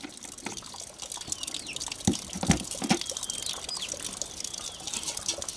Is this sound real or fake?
real